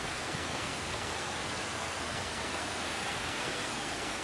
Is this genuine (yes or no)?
no